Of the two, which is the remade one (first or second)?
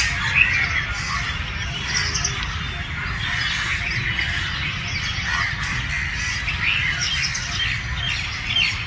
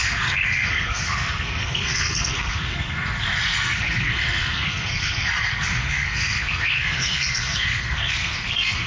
second